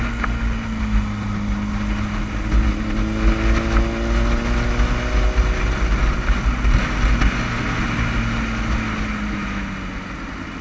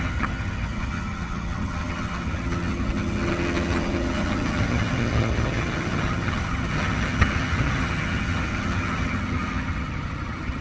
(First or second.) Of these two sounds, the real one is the first